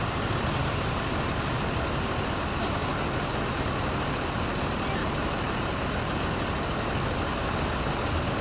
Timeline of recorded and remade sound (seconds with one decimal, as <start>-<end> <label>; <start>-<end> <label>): 0.0-5.0 recorded; 5.0-5.9 remade; 5.9-8.4 recorded